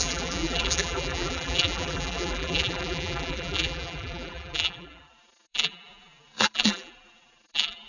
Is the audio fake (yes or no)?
yes